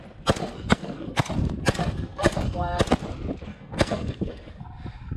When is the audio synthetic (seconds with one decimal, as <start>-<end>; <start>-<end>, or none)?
0.4-1.3; 1.8-2.8; 3.5-4.5